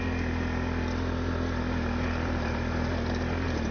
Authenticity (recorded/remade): recorded